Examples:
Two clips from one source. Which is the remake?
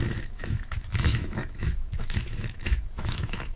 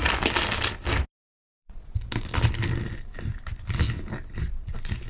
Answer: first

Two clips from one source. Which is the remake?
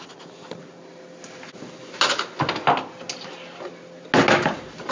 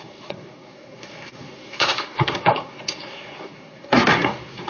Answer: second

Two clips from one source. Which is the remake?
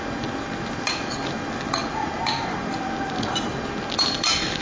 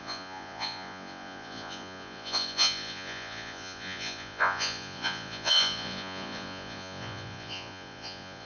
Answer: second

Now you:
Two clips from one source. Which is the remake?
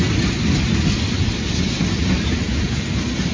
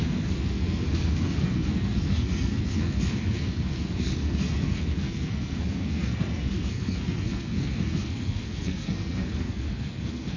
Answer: second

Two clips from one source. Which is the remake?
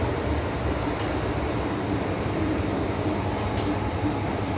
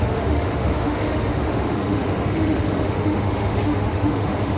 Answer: second